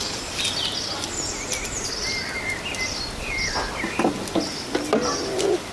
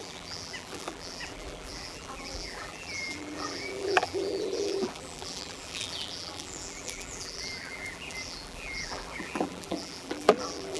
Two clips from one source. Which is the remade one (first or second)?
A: second